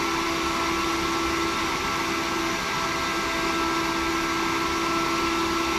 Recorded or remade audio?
recorded